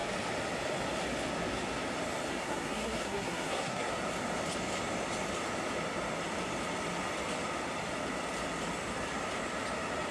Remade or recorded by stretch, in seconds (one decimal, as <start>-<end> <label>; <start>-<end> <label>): 0.0-2.3 recorded; 2.3-3.9 remade; 3.9-10.1 recorded